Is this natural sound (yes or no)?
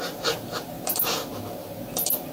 no